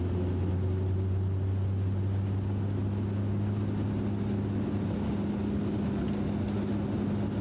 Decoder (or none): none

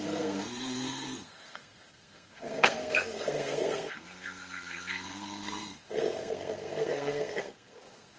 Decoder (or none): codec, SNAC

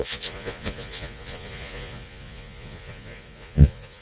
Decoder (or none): vocoder, Vocos